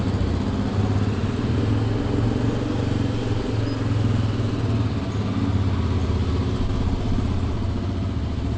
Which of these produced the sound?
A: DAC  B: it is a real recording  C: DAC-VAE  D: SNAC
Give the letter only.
B